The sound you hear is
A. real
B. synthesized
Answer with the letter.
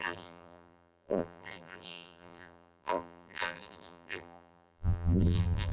B